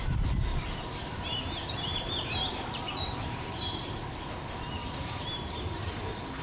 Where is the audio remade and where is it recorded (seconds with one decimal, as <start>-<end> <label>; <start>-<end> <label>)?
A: 0.0-0.5 recorded; 0.5-4.3 remade; 4.3-4.8 recorded; 4.8-5.9 remade; 5.9-6.4 recorded